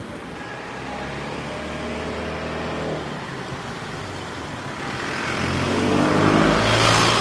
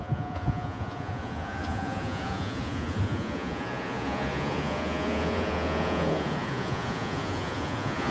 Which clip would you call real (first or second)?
first